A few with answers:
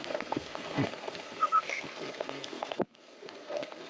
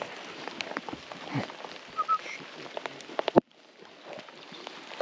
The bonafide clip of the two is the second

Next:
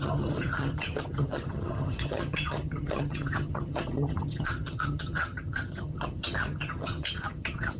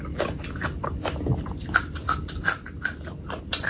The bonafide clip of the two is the second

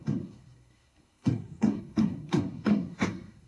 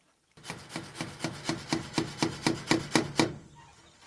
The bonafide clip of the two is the second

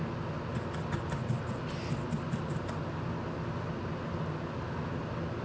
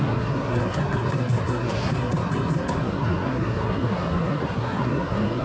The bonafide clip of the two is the first